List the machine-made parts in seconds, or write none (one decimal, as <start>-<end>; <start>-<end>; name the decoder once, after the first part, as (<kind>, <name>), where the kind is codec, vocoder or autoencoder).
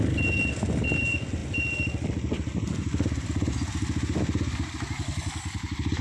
none